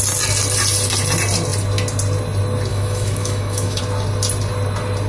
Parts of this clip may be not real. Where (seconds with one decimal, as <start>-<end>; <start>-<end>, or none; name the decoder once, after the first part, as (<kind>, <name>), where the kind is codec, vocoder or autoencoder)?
2.7-3.8 (autoencoder, DAC-VAE)